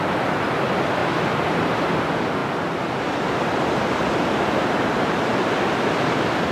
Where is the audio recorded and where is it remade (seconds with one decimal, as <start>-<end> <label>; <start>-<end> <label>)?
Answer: 0.0-1.0 recorded; 1.0-2.0 remade; 2.0-6.5 recorded